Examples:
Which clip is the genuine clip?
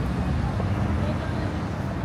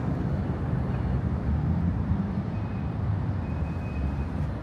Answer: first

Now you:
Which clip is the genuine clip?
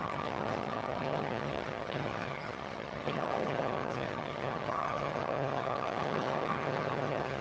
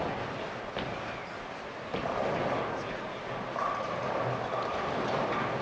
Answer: second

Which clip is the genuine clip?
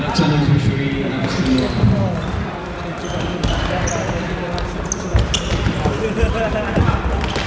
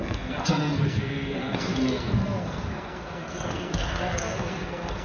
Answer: first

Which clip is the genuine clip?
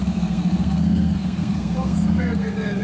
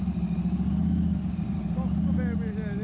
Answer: second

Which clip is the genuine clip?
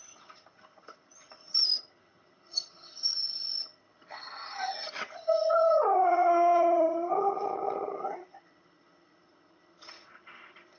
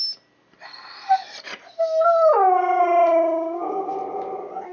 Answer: second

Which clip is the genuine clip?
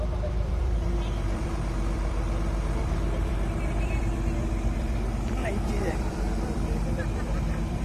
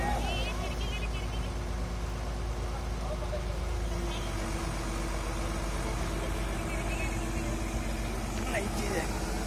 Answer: second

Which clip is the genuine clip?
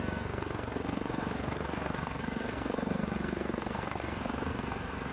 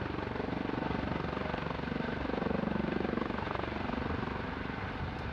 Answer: second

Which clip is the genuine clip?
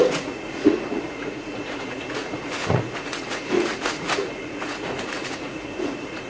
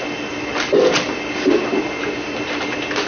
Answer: second